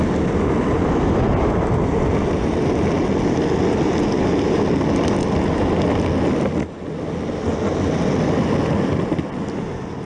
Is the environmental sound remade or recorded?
recorded